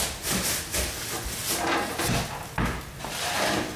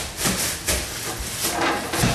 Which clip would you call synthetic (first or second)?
second